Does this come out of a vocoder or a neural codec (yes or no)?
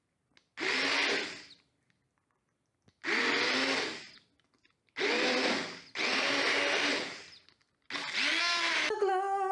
no